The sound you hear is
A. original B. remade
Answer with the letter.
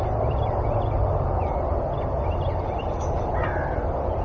A